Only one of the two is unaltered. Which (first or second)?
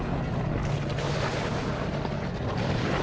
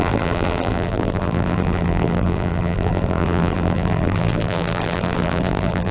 first